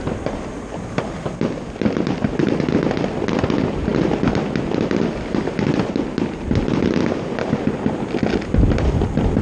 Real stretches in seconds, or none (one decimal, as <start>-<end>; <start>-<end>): 0.0-9.4